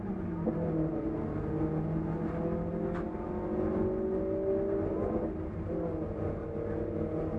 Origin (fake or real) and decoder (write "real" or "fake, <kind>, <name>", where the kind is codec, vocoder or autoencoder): real